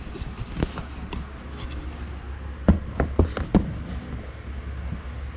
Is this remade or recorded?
recorded